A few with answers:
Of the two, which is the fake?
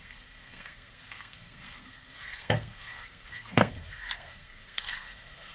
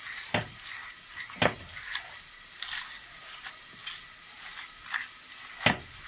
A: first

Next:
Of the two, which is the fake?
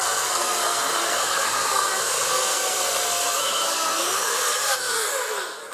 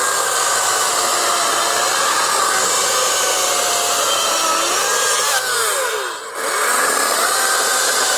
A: first